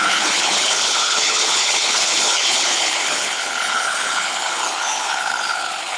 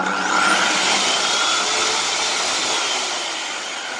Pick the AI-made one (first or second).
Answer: first